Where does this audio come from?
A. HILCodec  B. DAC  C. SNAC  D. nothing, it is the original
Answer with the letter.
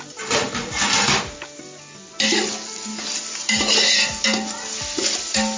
D